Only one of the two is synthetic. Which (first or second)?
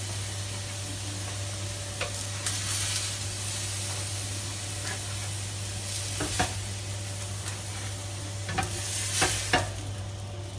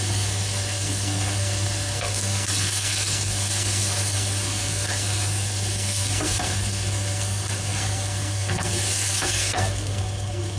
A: second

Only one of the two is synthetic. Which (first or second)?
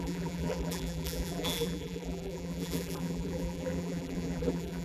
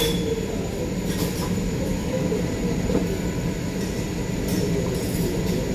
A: first